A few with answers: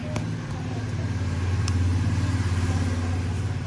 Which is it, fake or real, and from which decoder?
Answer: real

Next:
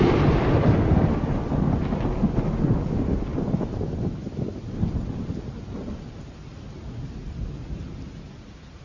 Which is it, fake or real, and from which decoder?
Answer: real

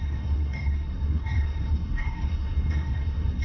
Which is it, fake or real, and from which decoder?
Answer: fake, codec, SNAC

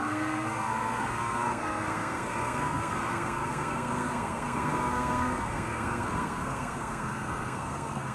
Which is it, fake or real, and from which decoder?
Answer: fake, codec, SNAC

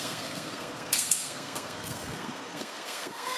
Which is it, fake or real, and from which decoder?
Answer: fake, codec, SNAC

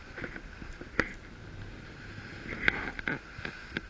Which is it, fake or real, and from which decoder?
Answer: real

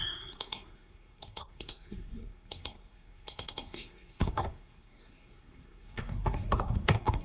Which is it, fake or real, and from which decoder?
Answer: fake, codec, SNAC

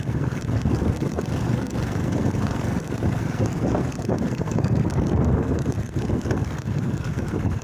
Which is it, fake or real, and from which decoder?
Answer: fake, codec, SNAC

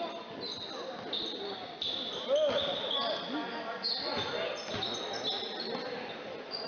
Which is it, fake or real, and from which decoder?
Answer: real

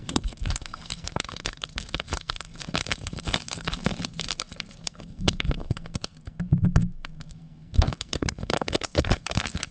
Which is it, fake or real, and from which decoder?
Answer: fake, codec, SNAC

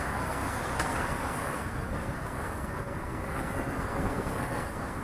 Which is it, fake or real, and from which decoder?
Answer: fake, codec, SNAC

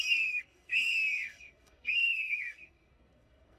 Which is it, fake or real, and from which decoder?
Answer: fake, codec, SNAC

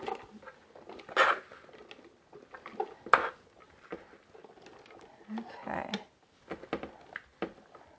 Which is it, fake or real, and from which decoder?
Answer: real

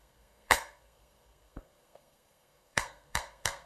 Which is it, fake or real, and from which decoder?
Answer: fake, codec, SNAC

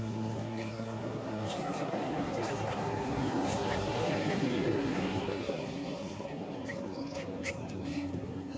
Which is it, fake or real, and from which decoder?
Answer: fake, codec, SNAC